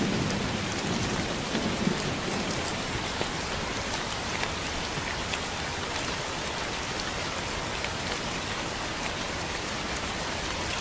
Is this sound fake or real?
fake